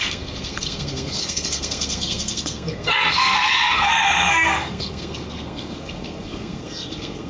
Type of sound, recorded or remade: remade